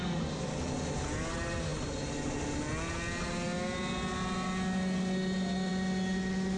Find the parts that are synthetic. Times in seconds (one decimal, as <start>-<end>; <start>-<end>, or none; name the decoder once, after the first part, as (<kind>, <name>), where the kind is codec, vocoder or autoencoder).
none